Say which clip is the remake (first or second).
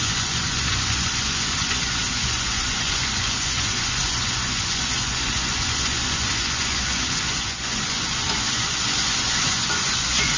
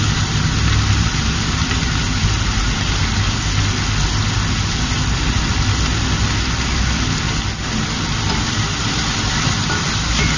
first